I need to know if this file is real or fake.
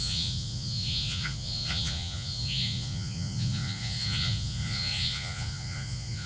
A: fake